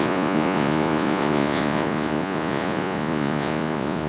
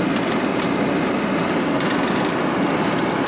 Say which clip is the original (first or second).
second